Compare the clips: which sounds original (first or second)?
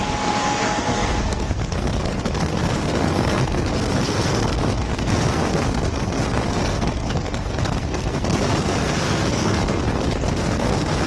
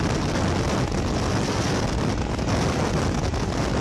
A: second